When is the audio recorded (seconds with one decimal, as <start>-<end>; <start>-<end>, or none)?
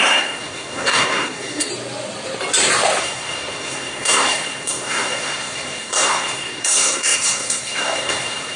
1.7-3.0